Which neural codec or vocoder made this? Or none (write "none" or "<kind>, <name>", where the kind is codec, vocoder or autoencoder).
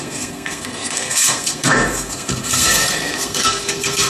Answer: codec, SNAC